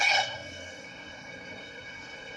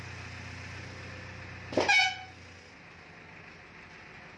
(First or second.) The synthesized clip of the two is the first